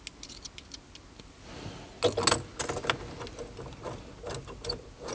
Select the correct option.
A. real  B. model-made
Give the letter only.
A